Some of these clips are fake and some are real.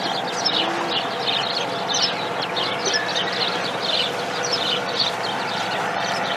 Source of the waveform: real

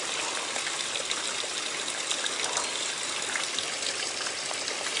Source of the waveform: real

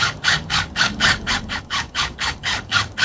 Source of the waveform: fake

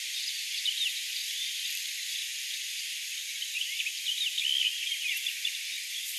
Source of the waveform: real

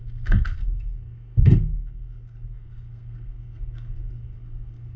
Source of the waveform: fake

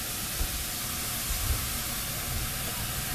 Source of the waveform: real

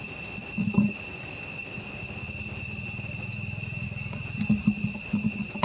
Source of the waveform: real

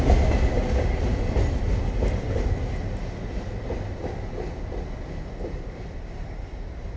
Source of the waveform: real